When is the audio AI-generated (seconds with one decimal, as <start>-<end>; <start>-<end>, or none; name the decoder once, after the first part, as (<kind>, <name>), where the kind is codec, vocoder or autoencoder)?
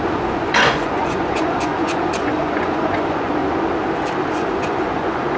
0.0-3.4 (vocoder, Vocos); 4.3-5.4